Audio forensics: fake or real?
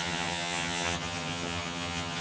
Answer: fake